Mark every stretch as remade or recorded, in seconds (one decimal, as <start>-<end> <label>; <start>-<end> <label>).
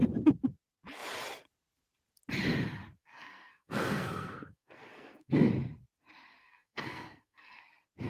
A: 0.0-3.0 recorded; 3.0-5.5 remade; 5.5-6.4 recorded; 6.4-7.6 remade; 7.6-8.1 recorded